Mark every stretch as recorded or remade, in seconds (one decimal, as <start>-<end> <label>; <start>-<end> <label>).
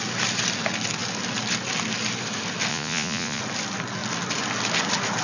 0.0-2.7 recorded; 2.7-3.4 remade; 3.4-5.2 recorded